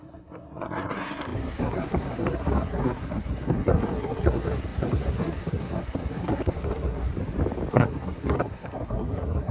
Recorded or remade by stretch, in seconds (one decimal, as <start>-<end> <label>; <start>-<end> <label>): 0.0-7.1 remade; 7.1-7.7 recorded; 7.7-9.5 remade